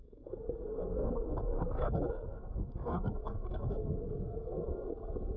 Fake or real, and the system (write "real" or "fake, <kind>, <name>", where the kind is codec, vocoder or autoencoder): fake, codec, SNAC